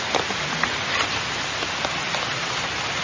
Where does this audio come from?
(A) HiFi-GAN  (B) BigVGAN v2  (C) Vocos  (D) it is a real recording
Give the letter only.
D